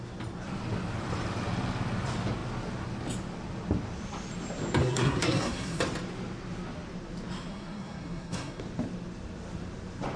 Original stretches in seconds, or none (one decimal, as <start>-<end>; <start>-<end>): 0.0-4.8; 5.8-7.5; 8.6-10.2